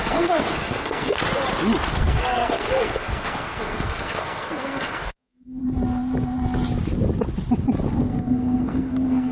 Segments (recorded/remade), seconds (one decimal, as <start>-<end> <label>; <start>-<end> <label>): 0.0-1.2 remade; 1.2-1.9 recorded; 1.9-5.6 remade; 5.6-8.0 recorded; 8.0-9.3 remade